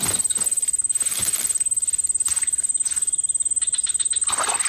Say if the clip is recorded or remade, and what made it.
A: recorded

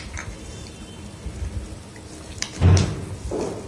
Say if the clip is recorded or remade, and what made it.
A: recorded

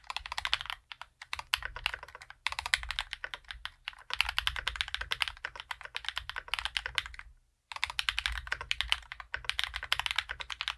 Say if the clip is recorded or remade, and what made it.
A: recorded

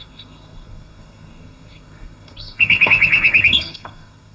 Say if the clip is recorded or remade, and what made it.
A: remade, codec, SNAC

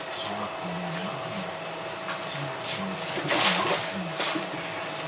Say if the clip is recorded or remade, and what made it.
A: recorded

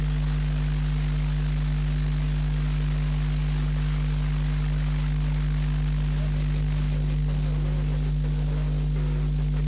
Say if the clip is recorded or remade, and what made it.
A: recorded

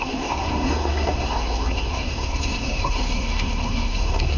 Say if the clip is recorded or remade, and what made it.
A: remade, codec, SNAC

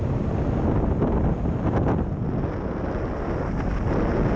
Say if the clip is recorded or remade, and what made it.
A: recorded